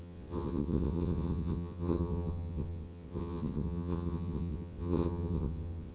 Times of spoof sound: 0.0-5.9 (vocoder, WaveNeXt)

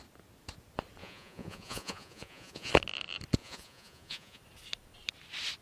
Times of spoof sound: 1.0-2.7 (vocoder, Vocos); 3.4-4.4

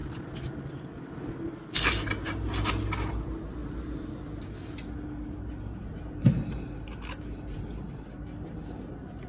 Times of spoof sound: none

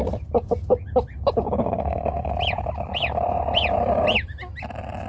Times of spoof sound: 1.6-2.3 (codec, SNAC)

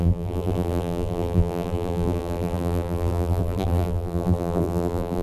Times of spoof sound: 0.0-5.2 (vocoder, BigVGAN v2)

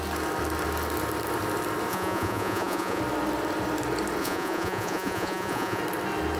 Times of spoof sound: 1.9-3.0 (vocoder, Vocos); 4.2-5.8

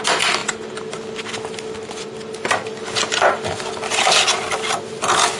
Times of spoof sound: none